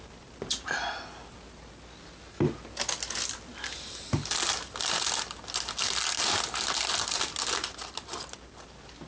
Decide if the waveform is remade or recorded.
recorded